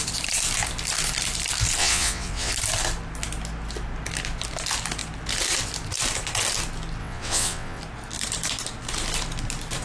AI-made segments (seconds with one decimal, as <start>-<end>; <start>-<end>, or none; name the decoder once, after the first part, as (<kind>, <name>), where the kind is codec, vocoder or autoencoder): 1.8-2.5 (vocoder, WaveNeXt); 7.0-7.8